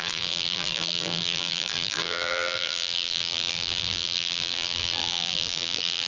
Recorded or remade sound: remade